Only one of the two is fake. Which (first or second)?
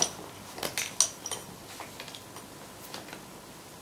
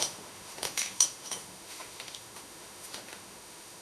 second